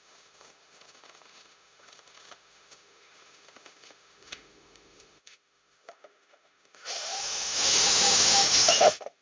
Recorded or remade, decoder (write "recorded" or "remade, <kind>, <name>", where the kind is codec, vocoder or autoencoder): remade, autoencoder, DAC-VAE